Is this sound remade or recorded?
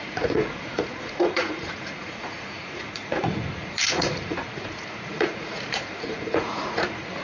remade